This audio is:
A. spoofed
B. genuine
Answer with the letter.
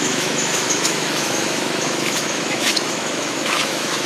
A